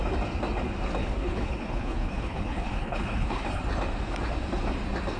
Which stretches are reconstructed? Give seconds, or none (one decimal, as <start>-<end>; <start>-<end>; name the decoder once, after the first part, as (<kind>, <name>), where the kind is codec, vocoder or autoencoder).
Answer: 1.0-3.6 (codec, HILCodec)